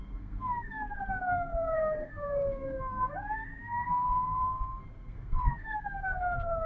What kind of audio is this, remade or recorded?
remade